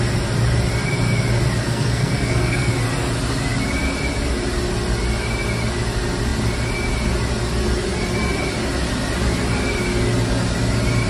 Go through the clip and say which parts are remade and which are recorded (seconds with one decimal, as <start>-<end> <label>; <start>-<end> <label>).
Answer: 0.0-1.6 recorded; 1.6-2.7 remade; 2.7-11.1 recorded